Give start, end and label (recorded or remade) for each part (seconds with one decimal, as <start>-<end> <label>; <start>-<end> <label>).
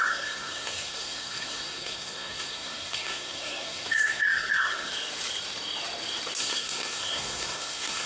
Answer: 0.0-4.9 remade; 4.9-6.4 recorded; 6.4-8.1 remade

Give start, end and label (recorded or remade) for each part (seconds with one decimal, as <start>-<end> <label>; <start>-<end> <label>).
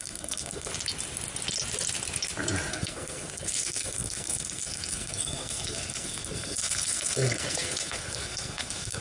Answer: 0.0-0.7 remade; 0.7-2.7 recorded; 2.7-9.0 remade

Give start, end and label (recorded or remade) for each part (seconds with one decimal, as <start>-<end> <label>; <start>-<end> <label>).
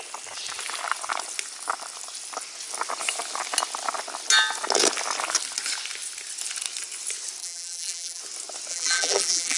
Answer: 0.0-7.4 recorded; 7.4-8.2 remade; 8.2-8.7 recorded; 8.7-9.6 remade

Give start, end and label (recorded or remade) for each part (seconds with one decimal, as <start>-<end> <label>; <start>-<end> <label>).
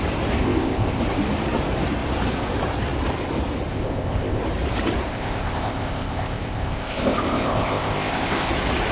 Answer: 0.0-0.4 recorded; 0.4-1.0 remade; 1.0-3.7 recorded; 3.7-4.4 remade; 4.4-5.1 recorded; 5.1-8.5 remade; 8.5-8.9 recorded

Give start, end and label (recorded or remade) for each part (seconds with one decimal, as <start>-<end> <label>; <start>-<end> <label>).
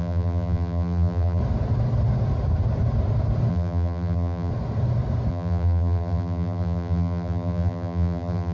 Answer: 0.0-1.4 remade; 1.4-3.5 recorded; 3.5-4.5 remade; 4.5-5.3 recorded; 5.3-8.5 remade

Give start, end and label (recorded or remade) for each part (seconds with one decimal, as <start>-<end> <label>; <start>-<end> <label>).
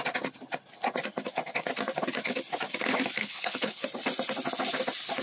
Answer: 0.0-3.2 recorded; 3.2-3.8 remade; 3.8-5.2 recorded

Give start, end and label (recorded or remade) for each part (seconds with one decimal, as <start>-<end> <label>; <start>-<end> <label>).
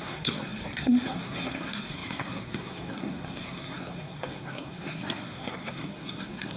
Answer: 0.0-6.6 remade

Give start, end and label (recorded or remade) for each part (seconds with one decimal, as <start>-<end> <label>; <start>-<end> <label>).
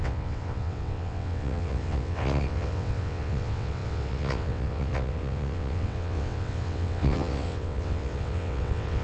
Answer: 0.0-9.0 remade